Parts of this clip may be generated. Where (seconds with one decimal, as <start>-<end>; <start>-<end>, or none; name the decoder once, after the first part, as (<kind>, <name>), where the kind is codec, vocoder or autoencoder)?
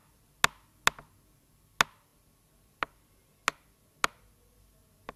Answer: none